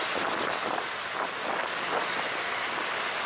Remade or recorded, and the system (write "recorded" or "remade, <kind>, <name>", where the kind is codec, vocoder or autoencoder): recorded